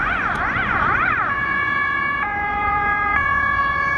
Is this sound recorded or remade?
remade